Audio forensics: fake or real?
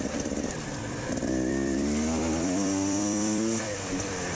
fake